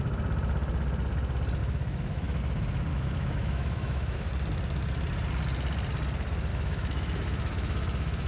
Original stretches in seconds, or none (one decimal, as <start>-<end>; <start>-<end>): 0.0-1.6; 2.4-2.9; 4.3-6.5